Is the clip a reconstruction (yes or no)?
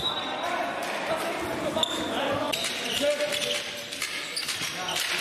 no